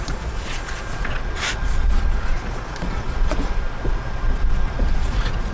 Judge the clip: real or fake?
fake